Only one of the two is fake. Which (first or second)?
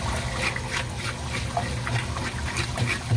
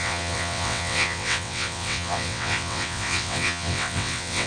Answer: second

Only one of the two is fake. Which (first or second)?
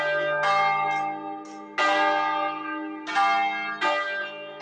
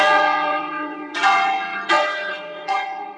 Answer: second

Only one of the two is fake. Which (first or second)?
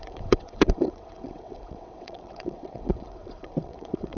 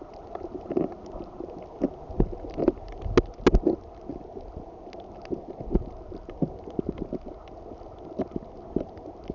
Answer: first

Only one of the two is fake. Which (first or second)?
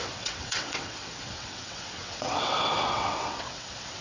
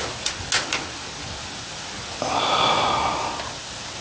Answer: first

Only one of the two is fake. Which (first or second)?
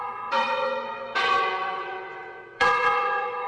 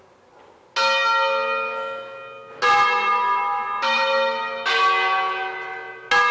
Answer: first